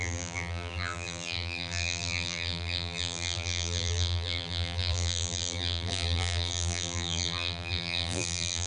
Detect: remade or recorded remade